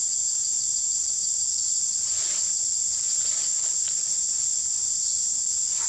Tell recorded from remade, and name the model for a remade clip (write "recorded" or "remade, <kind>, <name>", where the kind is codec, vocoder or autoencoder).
recorded